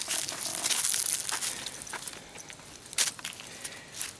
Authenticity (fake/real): real